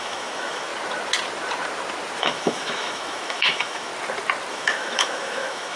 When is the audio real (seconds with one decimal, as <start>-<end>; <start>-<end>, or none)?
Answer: 0.7-2.2; 3.9-4.5